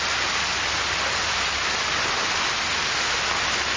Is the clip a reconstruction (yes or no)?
no